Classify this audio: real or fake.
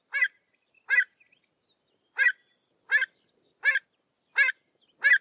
real